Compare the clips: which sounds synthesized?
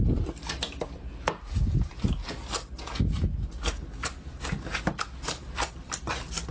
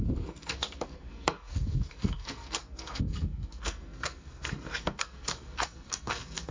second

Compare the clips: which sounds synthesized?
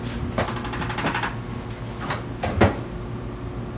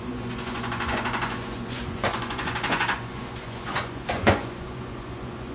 second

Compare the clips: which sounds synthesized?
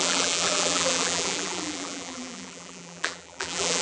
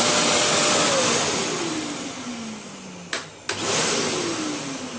first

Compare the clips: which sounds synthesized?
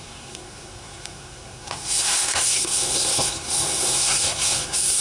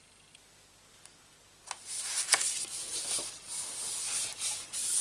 first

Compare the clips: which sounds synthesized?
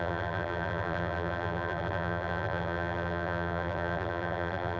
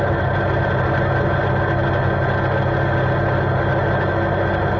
first